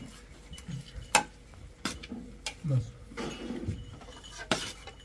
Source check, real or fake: real